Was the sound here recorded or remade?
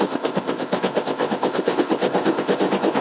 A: remade